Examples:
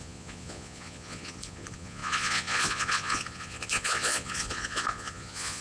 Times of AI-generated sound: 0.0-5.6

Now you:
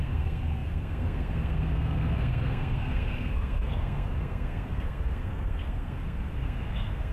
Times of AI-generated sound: 0.0-7.1

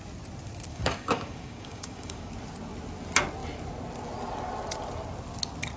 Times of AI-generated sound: 0.7-2.3

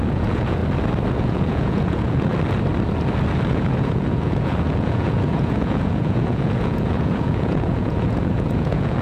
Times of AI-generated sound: 0.0-0.6; 1.1-2.3; 3.5-9.0

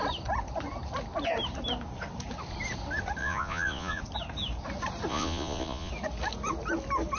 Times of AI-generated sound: 3.2-4.0; 5.1-5.9

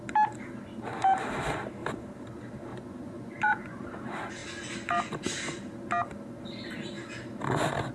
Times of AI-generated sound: 2.7-3.8

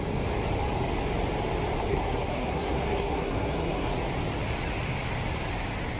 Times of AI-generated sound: 1.9-3.9